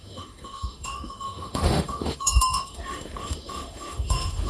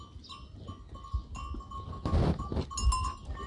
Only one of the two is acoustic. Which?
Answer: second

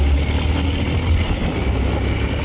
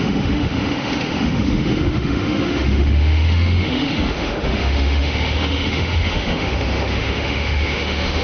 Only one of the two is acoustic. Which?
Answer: first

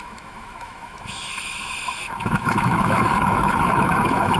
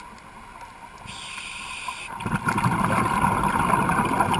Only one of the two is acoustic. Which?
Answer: second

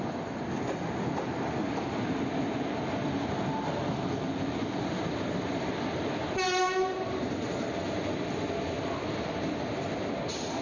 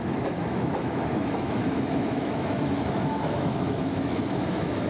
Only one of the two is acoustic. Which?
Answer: first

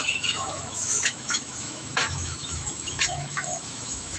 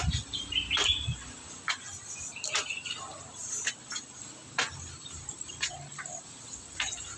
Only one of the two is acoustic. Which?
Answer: second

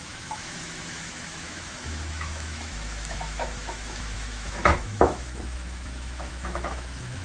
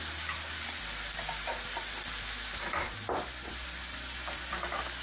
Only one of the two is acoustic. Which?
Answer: second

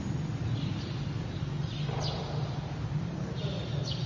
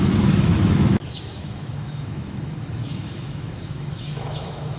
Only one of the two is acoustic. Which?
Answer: first